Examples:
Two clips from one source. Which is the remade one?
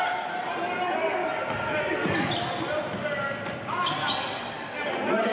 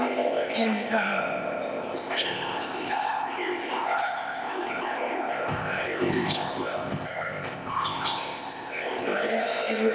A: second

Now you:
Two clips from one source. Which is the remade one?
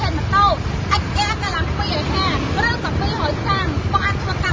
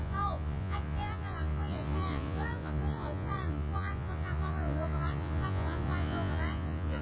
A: second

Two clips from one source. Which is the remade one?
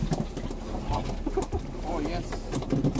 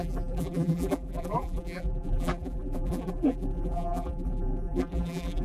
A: second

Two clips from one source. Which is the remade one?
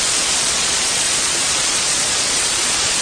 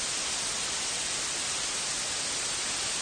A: first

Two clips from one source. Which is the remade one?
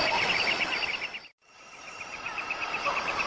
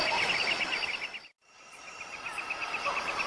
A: first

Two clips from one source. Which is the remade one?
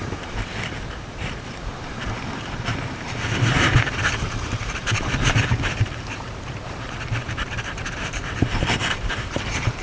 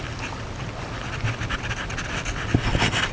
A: first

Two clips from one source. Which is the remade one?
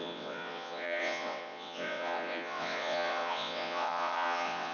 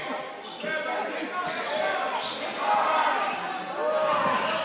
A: first